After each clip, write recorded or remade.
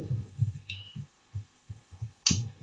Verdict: remade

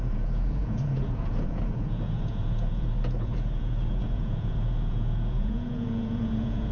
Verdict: remade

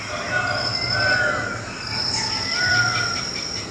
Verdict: recorded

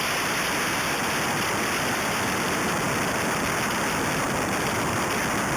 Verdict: recorded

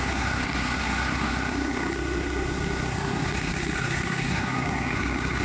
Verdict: remade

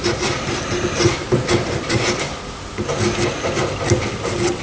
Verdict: recorded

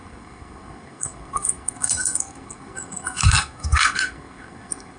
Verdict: remade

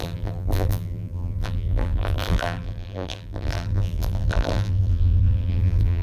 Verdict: remade